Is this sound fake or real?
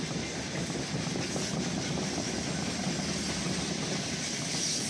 real